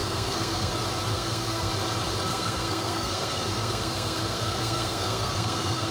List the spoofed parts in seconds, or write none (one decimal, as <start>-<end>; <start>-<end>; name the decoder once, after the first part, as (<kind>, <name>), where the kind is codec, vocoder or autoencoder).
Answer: 0.0-0.7 (codec, SNAC); 1.1-1.7; 2.3-5.9